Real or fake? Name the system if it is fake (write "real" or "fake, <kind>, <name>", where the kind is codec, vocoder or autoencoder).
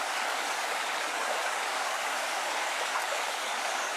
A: fake, codec, DAC